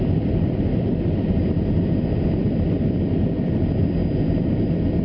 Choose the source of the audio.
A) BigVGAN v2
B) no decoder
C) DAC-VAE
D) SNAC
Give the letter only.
A